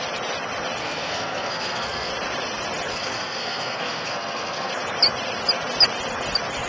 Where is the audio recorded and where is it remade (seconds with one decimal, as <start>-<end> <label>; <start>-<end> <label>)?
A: 0.0-0.8 recorded; 0.8-2.1 remade; 2.1-2.9 recorded; 2.9-4.7 remade; 4.7-6.7 recorded